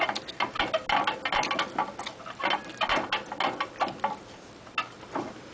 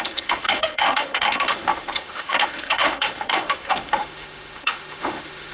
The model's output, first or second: second